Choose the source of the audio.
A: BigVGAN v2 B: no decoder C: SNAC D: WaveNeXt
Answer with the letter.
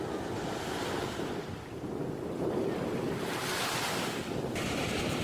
A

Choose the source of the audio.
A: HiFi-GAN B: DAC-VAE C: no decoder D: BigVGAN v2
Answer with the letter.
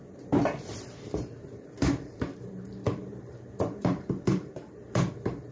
D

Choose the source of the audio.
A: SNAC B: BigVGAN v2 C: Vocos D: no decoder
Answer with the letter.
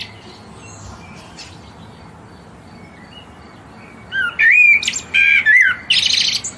D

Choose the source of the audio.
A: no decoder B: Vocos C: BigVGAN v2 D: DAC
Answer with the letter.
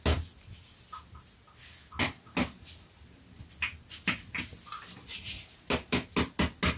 A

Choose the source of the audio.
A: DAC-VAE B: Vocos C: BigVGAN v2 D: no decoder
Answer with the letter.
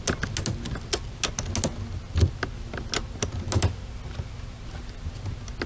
D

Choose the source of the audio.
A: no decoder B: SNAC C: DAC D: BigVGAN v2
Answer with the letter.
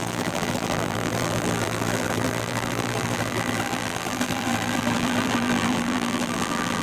D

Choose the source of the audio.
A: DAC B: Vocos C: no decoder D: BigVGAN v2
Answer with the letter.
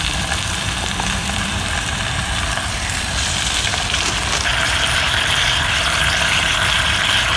D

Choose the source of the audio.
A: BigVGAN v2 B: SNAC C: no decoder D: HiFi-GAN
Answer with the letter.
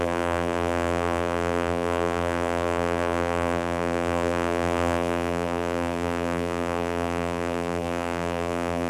A